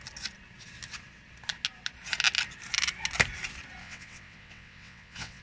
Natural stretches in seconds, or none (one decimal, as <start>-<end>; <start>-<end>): 0.0-3.8